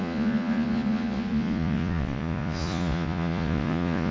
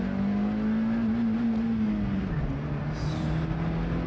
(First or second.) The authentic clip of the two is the second